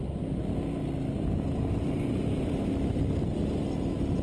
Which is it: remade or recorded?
recorded